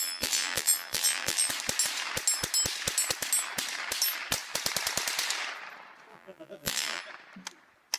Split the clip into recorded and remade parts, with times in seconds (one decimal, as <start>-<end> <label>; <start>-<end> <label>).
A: 0.0-1.5 remade; 1.5-6.1 recorded; 6.1-7.0 remade; 7.0-8.0 recorded